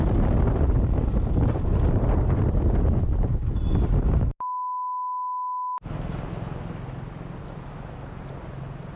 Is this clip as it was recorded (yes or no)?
yes